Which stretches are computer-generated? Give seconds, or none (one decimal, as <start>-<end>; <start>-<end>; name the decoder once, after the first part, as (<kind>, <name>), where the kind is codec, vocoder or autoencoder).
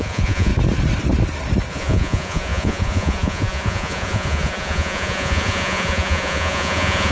0.0-0.5 (vocoder, Vocos); 1.7-7.1